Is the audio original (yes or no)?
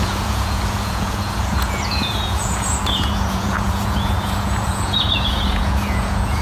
no